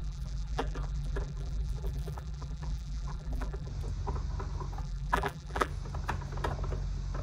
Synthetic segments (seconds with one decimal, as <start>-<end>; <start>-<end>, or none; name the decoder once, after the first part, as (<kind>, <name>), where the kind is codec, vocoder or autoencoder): 0.0-3.7 (vocoder, BigVGAN v2); 4.8-5.7